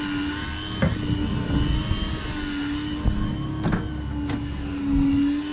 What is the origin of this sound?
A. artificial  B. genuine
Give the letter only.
B